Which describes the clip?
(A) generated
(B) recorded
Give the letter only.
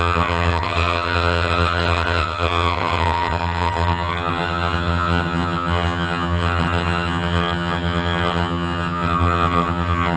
A